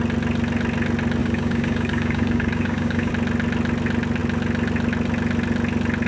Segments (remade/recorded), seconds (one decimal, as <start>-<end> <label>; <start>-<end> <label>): 0.0-1.2 recorded; 1.2-3.1 remade; 3.1-6.1 recorded